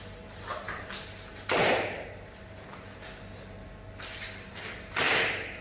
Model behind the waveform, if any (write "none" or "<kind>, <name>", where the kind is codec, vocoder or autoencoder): none